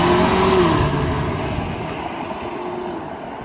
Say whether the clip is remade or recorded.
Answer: recorded